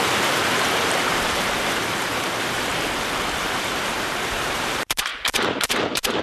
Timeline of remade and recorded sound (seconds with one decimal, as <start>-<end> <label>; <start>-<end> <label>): 0.0-2.7 remade; 2.7-3.4 recorded; 3.4-6.2 remade

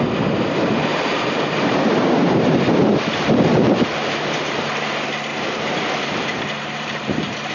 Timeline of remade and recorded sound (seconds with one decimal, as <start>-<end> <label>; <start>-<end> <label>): 0.0-0.9 recorded; 0.9-4.8 remade; 4.8-5.3 recorded; 5.3-7.5 remade

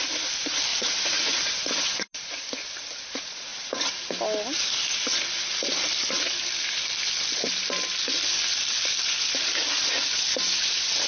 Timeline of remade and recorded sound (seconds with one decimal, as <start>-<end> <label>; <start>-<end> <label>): 0.0-0.7 recorded; 0.7-1.5 remade; 1.5-11.1 recorded

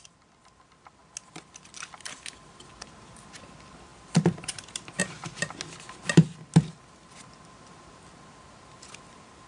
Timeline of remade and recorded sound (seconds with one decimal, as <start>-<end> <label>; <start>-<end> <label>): 0.0-3.9 recorded; 3.9-5.0 remade; 5.0-9.5 recorded